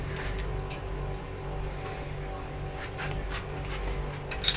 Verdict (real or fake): real